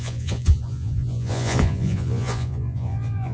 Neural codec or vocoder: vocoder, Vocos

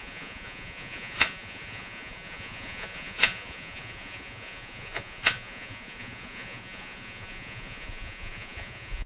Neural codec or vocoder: vocoder, Vocos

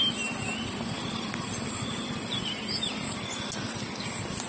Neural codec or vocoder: none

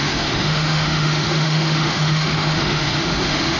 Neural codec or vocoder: autoencoder, DAC-VAE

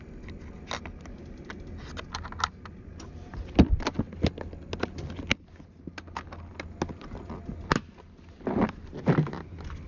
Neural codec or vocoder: none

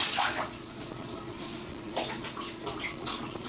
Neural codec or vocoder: vocoder, Vocos